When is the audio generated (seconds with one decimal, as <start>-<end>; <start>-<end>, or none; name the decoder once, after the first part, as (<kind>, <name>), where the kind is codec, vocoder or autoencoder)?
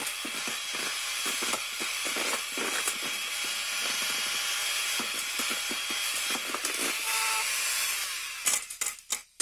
none